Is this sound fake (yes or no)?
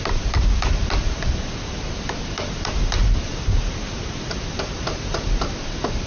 yes